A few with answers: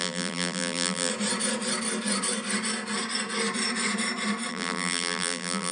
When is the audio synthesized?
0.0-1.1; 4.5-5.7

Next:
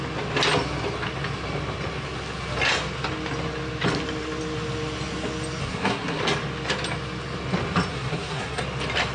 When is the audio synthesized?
5.6-6.2; 7.9-8.6

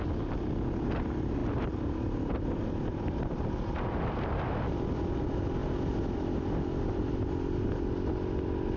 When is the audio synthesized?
1.4-3.5; 5.6-7.9